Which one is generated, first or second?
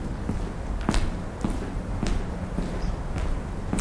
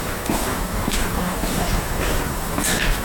second